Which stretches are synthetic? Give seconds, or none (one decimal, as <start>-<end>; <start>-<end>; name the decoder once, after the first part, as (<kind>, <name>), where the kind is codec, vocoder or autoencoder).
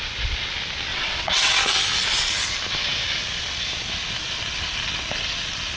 0.9-1.6 (vocoder, WaveNeXt)